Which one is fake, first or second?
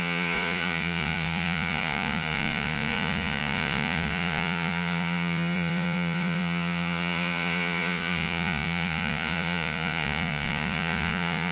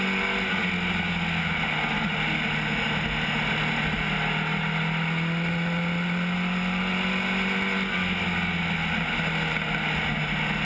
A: first